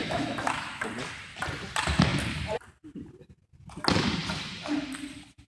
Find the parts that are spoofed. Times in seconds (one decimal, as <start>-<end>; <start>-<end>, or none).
0.0-0.9

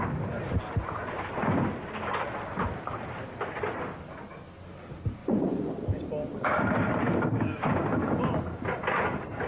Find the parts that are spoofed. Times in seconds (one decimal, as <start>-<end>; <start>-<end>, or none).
5.2-5.7

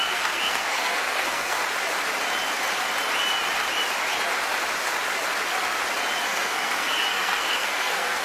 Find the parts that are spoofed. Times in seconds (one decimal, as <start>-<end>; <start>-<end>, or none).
0.0-1.6; 6.2-8.2

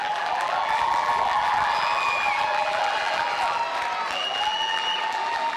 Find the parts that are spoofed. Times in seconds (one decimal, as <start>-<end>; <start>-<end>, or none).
0.0-3.6; 4.1-5.6

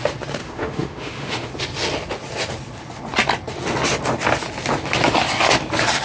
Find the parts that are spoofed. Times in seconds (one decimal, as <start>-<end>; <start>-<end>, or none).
0.4-1.5